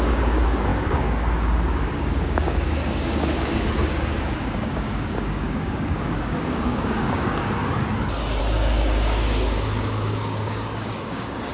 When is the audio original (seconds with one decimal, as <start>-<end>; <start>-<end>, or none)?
7.6-8.4